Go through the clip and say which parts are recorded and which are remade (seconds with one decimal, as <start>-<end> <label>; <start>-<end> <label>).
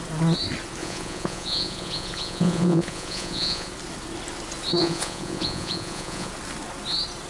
0.0-0.8 recorded; 0.8-3.7 remade; 3.7-4.8 recorded; 4.8-6.3 remade; 6.3-7.3 recorded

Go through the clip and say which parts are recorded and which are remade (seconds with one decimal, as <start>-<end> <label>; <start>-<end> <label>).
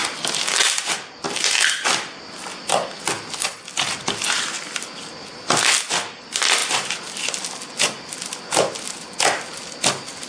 0.0-10.3 recorded